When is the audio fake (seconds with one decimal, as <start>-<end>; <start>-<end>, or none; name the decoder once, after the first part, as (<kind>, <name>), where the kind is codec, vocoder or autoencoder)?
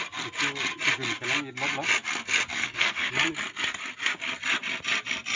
2.6-3.1 (codec, SNAC)